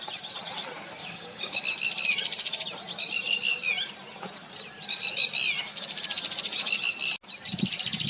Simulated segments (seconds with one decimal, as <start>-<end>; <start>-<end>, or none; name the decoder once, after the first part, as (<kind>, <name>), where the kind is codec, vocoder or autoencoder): 1.0-1.6 (codec, DAC)